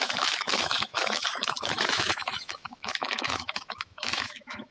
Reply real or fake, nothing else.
fake